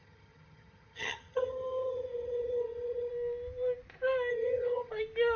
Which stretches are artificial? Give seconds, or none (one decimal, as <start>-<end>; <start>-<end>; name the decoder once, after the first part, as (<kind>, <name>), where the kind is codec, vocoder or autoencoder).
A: 0.0-3.1 (vocoder, HiFi-GAN); 4.3-4.9